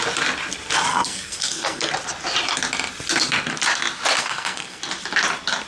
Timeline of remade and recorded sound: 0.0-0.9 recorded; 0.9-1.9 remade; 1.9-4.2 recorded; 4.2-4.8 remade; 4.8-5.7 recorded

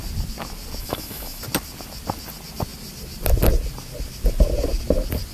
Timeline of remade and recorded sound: 0.0-0.8 recorded; 0.8-1.4 remade; 1.4-5.3 recorded

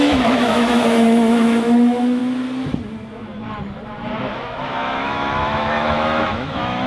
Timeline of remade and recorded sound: 0.0-2.2 remade; 2.2-4.2 recorded; 4.2-6.9 remade

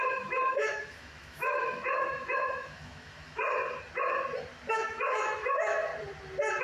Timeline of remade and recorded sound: 0.0-3.4 remade; 3.4-4.7 recorded; 4.7-5.9 remade; 5.9-6.6 recorded

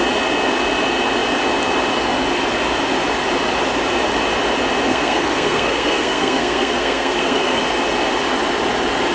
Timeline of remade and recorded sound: 0.0-4.9 recorded; 4.9-7.6 remade; 7.6-9.1 recorded

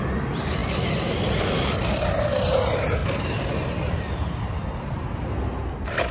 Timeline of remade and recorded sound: 0.0-6.1 recorded

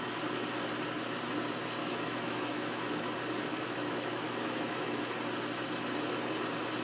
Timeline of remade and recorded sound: 0.0-1.8 recorded; 1.8-3.0 remade; 3.0-3.5 recorded; 3.5-5.0 remade; 5.0-6.8 recorded